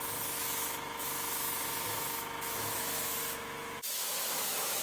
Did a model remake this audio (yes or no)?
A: yes